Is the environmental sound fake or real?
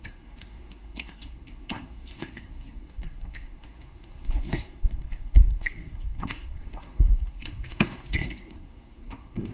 fake